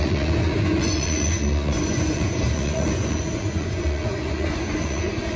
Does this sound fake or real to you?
fake